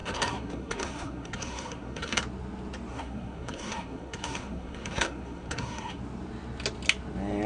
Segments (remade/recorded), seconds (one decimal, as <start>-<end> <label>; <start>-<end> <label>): 0.0-2.2 remade; 2.2-2.9 recorded; 2.9-6.0 remade; 6.0-7.5 recorded